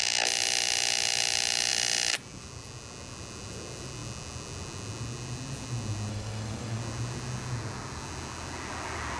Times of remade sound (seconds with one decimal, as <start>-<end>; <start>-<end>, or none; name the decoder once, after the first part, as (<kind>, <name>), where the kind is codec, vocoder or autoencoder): 6.1-6.8 (codec, SNAC)